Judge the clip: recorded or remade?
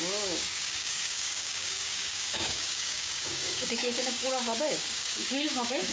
remade